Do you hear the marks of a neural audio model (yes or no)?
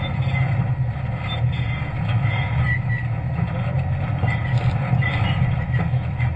no